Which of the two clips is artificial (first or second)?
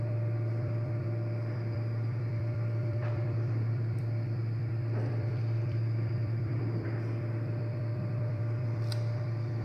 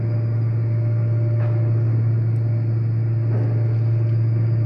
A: first